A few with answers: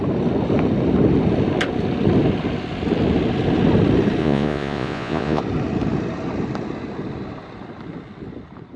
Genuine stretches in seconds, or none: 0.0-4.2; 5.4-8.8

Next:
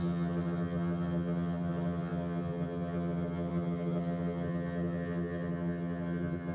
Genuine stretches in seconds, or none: none

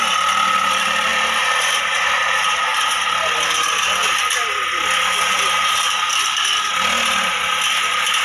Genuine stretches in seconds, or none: 0.0-8.2

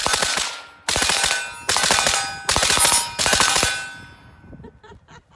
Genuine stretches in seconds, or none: 0.0-5.4